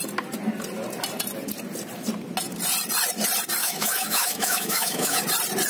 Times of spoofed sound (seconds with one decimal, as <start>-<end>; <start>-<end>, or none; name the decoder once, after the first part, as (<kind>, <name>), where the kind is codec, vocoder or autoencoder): 3.6-5.2 (autoencoder, DAC-VAE)